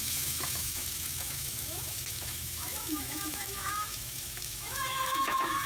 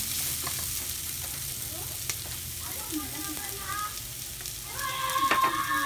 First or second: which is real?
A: second